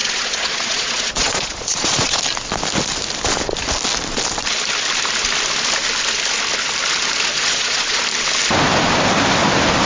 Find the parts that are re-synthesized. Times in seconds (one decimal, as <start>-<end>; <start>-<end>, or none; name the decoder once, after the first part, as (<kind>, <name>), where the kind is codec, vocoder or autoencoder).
0.0-2.2 (vocoder, Vocos); 7.3-8.0